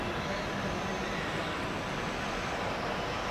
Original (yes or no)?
yes